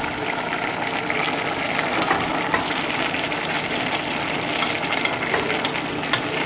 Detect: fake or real real